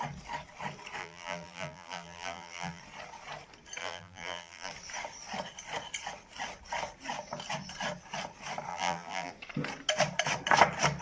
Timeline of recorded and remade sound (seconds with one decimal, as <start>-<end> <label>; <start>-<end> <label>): 0.0-1.0 recorded; 1.0-2.8 remade; 2.8-3.8 recorded; 3.8-4.7 remade; 4.7-8.7 recorded; 8.7-9.3 remade; 9.3-11.0 recorded